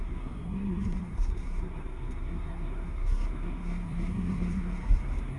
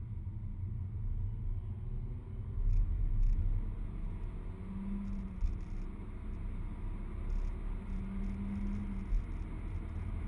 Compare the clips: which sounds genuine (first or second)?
second